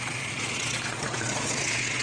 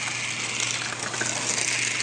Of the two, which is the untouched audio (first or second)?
second